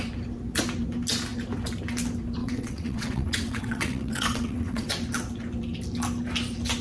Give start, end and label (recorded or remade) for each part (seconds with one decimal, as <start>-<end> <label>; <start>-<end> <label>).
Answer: 0.0-2.4 recorded; 2.4-4.9 remade; 4.9-6.8 recorded